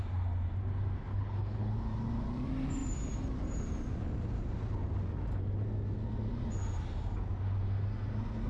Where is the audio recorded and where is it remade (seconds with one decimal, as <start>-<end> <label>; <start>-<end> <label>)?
0.0-1.1 recorded; 1.1-1.7 remade; 1.7-8.5 recorded